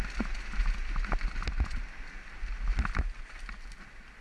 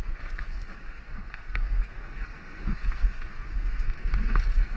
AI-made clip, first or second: second